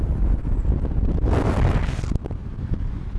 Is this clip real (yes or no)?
yes